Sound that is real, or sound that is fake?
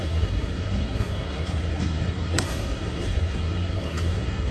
fake